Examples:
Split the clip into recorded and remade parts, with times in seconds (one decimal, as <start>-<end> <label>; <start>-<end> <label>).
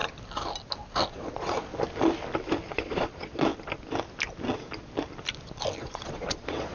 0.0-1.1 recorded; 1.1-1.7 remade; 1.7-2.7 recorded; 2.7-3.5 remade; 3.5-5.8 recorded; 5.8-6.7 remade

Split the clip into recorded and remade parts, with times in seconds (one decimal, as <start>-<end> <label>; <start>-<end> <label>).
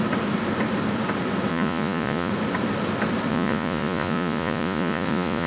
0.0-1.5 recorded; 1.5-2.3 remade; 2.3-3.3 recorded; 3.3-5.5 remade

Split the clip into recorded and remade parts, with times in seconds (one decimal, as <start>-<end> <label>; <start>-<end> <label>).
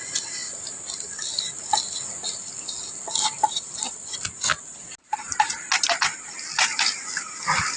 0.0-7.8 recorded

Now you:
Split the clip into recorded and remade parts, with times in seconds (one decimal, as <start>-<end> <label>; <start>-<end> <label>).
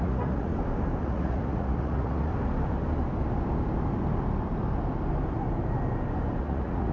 0.0-0.5 remade; 0.5-1.0 recorded; 1.0-2.3 remade; 2.3-6.4 recorded; 6.4-6.9 remade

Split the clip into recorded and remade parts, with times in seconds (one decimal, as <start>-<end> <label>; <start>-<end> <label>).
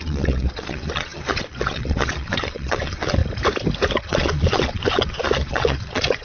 0.0-3.2 remade; 3.2-3.9 recorded; 3.9-6.2 remade